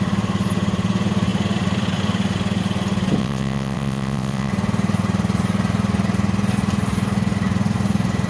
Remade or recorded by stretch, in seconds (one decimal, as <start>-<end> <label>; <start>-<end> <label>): 0.0-3.2 recorded; 3.2-4.5 remade; 4.5-8.3 recorded